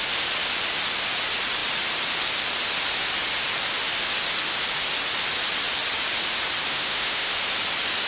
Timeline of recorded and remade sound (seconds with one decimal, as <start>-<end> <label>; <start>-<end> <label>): 0.0-6.7 recorded; 6.7-7.3 remade; 7.3-8.1 recorded